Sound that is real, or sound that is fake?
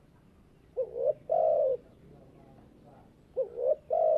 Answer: real